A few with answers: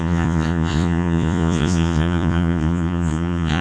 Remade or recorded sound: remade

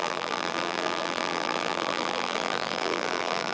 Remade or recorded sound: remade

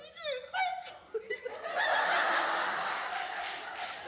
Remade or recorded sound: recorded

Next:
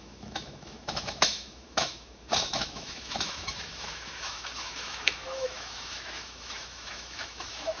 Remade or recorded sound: remade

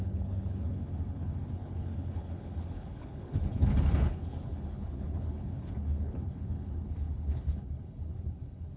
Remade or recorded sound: remade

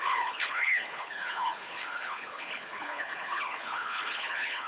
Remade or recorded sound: remade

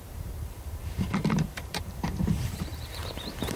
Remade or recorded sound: remade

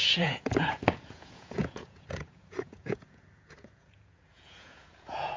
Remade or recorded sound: remade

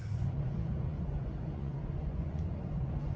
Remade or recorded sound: remade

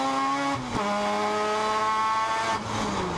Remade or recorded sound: recorded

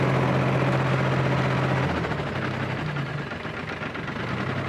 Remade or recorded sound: recorded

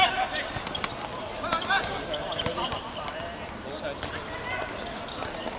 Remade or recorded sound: recorded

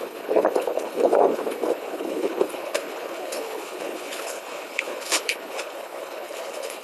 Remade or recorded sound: remade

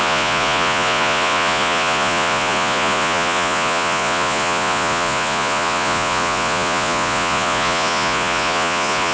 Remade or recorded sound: remade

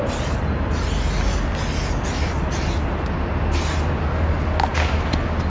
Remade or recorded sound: recorded